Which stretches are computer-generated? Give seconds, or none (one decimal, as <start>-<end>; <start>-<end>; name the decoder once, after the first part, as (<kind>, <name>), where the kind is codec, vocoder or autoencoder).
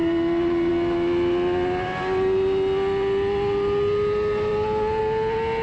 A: none